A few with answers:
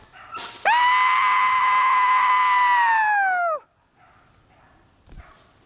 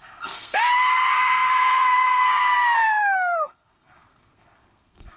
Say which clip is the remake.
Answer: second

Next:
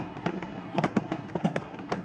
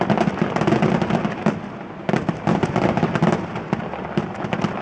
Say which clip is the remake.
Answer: first